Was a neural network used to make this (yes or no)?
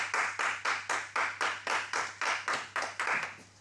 no